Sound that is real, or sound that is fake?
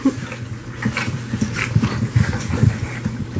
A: real